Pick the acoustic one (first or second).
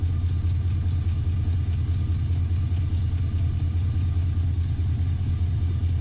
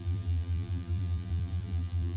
first